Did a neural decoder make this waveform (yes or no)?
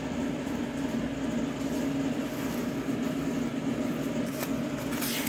no